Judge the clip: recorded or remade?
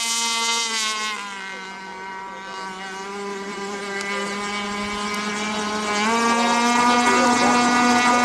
recorded